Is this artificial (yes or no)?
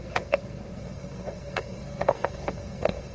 yes